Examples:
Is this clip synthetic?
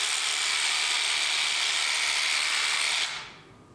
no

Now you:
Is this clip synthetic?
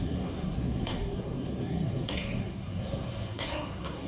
yes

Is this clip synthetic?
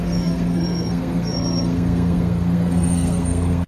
yes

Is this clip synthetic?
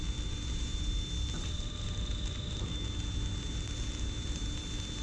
no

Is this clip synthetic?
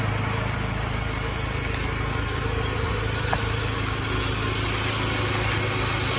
no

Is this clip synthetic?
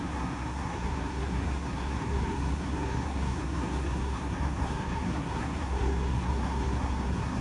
yes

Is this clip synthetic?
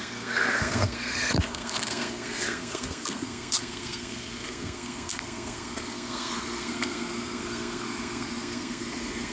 yes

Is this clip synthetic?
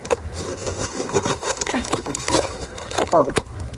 yes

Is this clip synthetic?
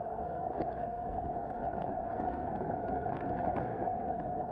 yes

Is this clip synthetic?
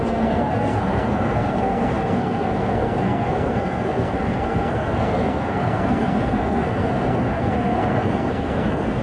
yes